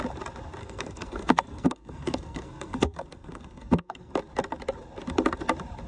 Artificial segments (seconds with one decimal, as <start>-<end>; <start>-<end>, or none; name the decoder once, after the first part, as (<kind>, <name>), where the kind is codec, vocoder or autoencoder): 0.6-4.1 (codec, SNAC)